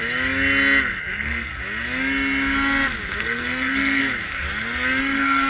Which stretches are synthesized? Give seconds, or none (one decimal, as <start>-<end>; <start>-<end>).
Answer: 1.0-1.5; 3.2-4.0; 5.0-5.5